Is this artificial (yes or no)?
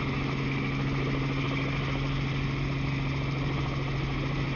no